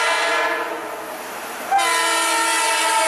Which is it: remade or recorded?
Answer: recorded